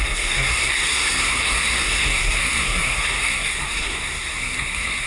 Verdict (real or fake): fake